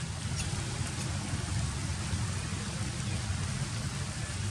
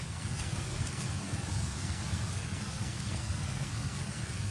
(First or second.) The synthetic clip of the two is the second